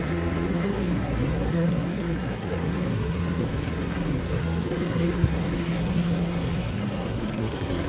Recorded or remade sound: remade